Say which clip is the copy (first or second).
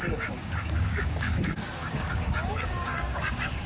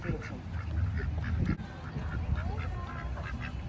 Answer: first